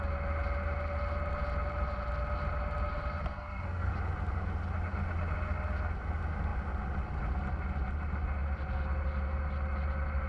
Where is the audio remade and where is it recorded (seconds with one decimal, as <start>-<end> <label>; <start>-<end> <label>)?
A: 0.0-3.3 recorded; 3.3-3.9 remade; 3.9-10.3 recorded